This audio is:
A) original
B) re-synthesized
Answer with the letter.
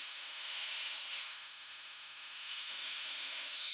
B